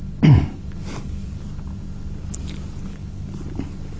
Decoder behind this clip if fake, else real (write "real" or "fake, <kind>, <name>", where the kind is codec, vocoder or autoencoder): real